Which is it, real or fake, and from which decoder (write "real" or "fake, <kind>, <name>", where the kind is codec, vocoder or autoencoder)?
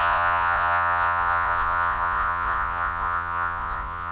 fake, vocoder, Vocos